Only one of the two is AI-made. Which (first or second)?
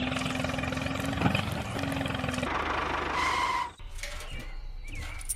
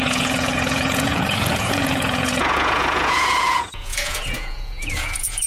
second